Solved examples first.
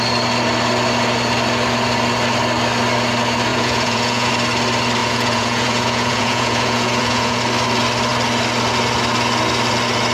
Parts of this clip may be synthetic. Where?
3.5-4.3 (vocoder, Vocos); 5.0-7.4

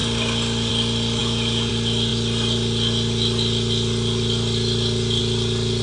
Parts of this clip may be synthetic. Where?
1.2-1.7 (vocoder, Vocos)

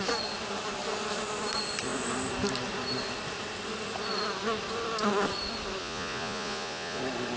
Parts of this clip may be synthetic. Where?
5.8-7.0 (vocoder, Vocos)